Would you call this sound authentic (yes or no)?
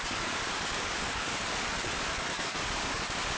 no